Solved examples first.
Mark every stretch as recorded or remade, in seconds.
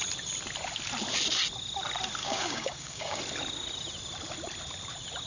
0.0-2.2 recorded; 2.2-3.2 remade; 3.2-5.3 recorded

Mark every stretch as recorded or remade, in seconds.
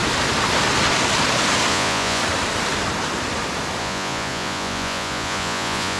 0.0-1.7 recorded; 1.7-2.2 remade; 2.2-3.8 recorded; 3.8-6.0 remade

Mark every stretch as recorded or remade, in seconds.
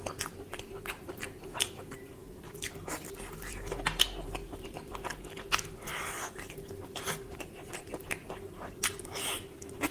0.0-9.9 recorded